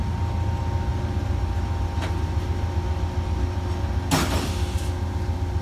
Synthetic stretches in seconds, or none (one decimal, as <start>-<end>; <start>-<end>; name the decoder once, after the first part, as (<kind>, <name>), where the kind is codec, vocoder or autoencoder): none